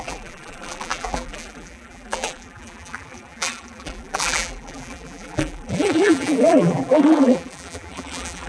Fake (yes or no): yes